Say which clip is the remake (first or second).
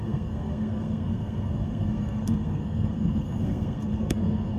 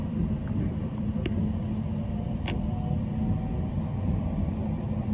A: first